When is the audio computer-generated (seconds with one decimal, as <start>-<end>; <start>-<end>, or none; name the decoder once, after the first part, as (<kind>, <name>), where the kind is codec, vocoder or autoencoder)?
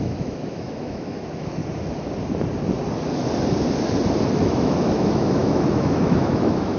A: 0.0-1.6 (autoencoder, DAC-VAE); 4.3-6.8